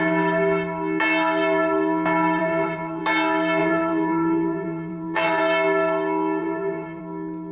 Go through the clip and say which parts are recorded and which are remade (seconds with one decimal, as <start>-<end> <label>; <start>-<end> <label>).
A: 0.0-2.4 recorded; 2.4-3.0 remade; 3.0-3.6 recorded; 3.6-5.4 remade; 5.4-6.4 recorded; 6.4-7.0 remade; 7.0-7.5 recorded